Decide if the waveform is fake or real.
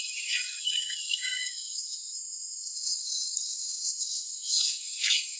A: fake